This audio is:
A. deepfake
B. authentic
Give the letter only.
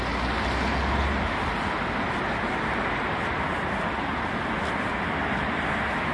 B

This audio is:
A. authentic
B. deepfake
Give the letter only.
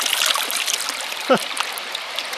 A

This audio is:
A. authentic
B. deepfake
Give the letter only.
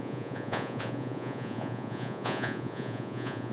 B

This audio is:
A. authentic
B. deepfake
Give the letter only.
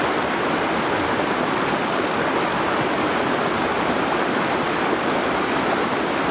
A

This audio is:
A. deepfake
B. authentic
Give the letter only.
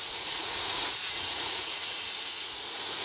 A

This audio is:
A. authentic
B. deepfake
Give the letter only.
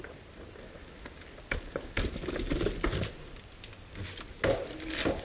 A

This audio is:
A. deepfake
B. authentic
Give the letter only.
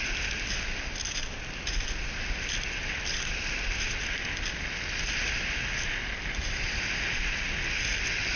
B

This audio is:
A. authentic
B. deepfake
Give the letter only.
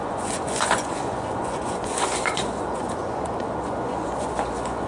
B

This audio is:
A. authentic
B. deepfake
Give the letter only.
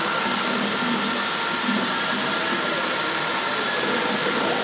A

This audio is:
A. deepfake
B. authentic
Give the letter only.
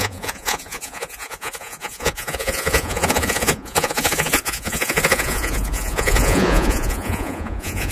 A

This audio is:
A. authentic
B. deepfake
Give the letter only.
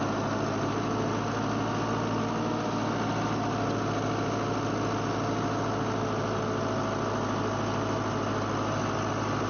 A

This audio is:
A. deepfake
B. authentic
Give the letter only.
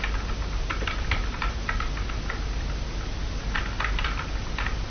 B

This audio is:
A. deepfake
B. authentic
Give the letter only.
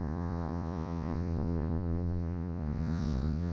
A